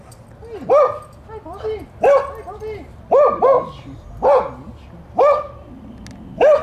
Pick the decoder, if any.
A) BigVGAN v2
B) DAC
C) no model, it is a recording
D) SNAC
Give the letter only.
C